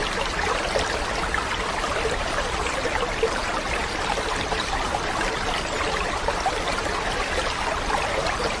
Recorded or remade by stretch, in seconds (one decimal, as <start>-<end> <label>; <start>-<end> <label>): 0.0-8.6 recorded